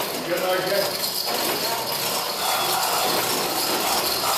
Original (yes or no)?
yes